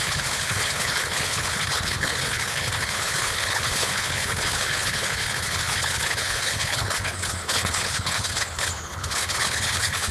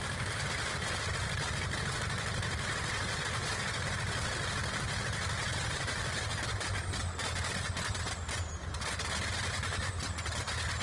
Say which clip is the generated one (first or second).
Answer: first